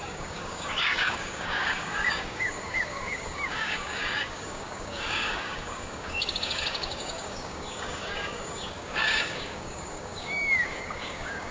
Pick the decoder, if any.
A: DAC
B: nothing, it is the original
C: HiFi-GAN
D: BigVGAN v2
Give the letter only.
A